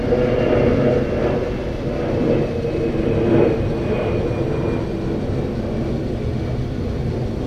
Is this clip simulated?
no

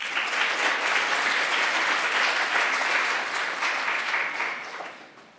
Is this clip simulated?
yes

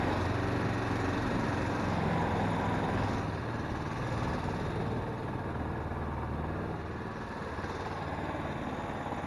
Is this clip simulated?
no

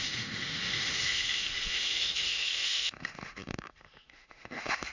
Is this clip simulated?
yes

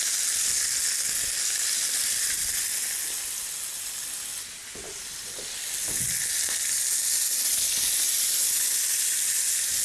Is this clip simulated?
no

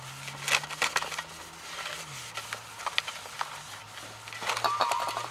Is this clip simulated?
no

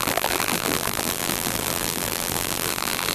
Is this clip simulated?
yes